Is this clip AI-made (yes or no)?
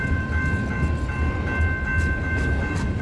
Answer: no